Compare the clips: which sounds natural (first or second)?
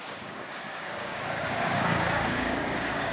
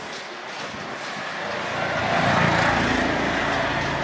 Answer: second